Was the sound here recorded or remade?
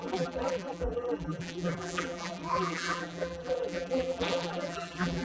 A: remade